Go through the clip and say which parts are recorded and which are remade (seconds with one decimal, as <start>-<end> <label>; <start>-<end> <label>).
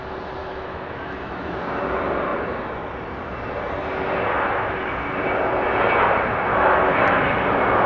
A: 0.0-0.4 recorded; 0.4-1.5 remade; 1.5-6.5 recorded; 6.5-7.0 remade; 7.0-7.9 recorded